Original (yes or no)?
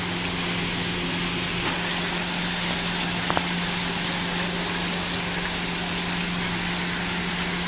yes